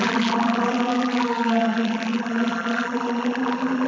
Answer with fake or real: fake